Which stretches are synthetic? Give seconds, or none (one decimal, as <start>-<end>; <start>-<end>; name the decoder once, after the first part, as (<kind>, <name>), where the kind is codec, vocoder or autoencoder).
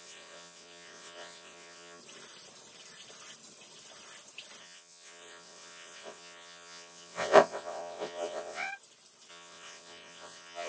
0.0-2.0 (vocoder, WaveNeXt); 4.6-8.7; 9.3-10.7